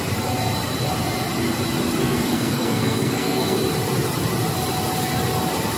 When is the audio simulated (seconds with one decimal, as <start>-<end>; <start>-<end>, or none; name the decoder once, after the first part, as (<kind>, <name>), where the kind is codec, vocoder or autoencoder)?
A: 2.0-3.6 (codec, SNAC)